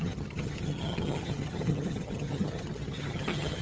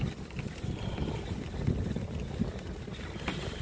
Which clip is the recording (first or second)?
second